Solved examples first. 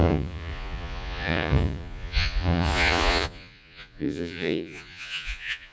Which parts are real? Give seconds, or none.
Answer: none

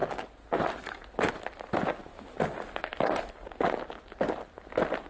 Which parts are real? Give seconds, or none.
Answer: 0.0-2.1; 3.3-5.1

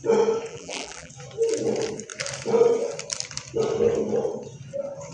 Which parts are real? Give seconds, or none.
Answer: 0.0-0.5; 1.1-5.1

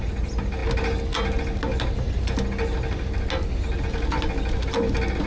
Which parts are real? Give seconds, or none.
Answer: 0.0-5.3

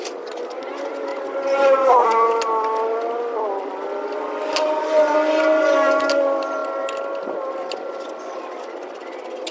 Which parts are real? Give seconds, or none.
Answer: 0.0-9.5